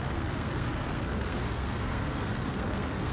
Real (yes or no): no